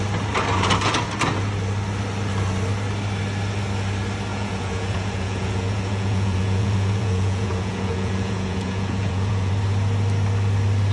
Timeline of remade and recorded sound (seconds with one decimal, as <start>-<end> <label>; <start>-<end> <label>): 0.0-4.3 recorded; 4.3-9.5 remade; 9.5-10.9 recorded